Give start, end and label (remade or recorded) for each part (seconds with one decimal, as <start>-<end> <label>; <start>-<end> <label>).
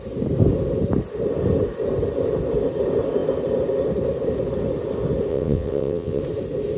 0.0-5.3 recorded; 5.3-6.2 remade; 6.2-6.8 recorded